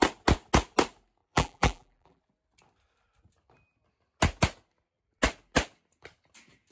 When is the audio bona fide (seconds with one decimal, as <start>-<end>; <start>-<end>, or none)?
0.0-1.2; 2.2-6.7